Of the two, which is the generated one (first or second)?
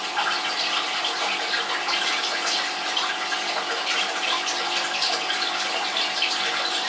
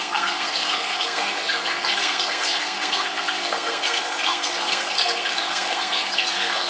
second